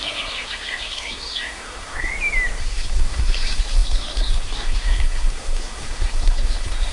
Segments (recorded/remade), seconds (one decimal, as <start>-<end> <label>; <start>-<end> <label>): 0.0-2.1 remade; 2.1-2.6 recorded; 2.6-6.9 remade